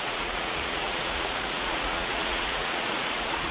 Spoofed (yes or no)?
yes